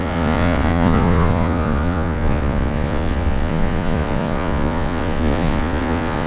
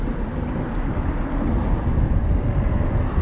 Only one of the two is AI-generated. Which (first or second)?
first